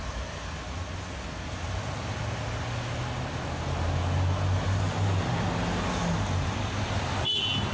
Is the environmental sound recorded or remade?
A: recorded